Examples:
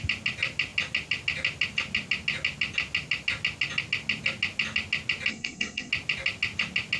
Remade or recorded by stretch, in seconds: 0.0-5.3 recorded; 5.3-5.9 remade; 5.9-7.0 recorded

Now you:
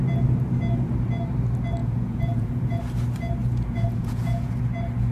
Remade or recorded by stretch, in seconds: 0.0-1.8 recorded; 1.8-2.8 remade; 2.8-3.4 recorded; 3.4-4.5 remade; 4.5-5.1 recorded

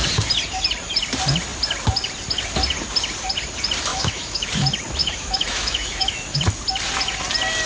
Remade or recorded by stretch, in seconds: 0.0-3.9 recorded; 3.9-4.5 remade; 4.5-5.0 recorded; 5.0-6.4 remade; 6.4-7.7 recorded

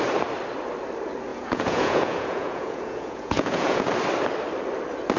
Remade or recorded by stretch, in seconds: 0.0-1.3 recorded; 1.3-3.9 remade; 3.9-5.2 recorded

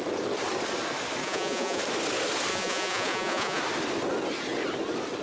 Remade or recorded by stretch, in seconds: 0.0-1.2 recorded; 1.2-1.8 remade; 1.8-2.5 recorded; 2.5-3.6 remade; 3.6-5.2 recorded